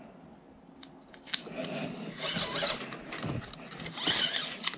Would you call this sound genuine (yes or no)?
yes